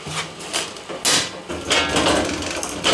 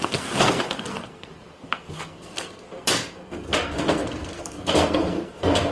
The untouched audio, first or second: first